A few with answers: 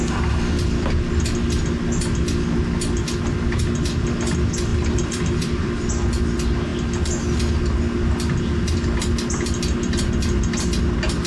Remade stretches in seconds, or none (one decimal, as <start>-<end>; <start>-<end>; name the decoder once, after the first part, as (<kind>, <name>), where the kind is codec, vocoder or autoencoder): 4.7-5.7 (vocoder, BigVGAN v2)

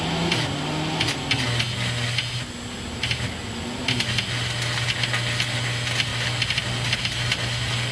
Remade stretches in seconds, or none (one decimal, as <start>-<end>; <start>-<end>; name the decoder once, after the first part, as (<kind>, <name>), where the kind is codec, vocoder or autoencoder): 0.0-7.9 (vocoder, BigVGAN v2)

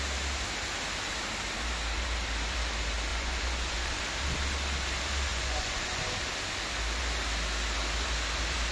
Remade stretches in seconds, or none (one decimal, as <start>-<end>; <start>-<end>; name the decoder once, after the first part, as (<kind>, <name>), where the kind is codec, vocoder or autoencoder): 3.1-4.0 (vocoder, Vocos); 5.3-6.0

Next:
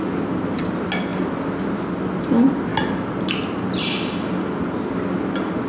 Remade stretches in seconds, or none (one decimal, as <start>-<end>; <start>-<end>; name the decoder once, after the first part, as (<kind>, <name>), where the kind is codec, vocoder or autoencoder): none

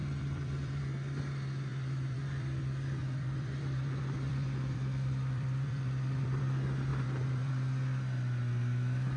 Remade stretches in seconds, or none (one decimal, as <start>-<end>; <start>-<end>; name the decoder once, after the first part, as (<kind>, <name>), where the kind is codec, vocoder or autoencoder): 0.0-0.8 (vocoder, BigVGAN v2); 1.7-2.6; 3.0-6.4; 6.9-7.5